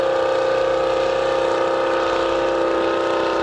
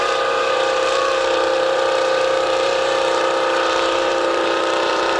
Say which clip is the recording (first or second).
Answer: first